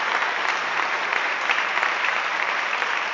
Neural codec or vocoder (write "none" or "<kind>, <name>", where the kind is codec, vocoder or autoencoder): vocoder, BigVGAN v2